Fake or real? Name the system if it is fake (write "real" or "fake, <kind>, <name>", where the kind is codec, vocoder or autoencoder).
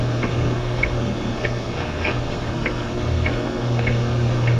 fake, codec, SNAC